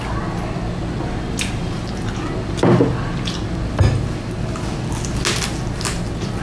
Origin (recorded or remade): recorded